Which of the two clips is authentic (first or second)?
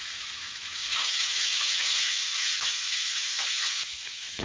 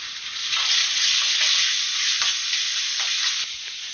second